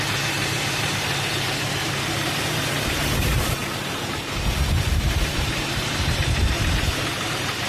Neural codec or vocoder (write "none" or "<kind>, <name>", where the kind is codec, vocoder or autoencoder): vocoder, BigVGAN v2